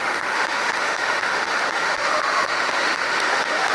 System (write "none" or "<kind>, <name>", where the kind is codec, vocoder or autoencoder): autoencoder, DAC-VAE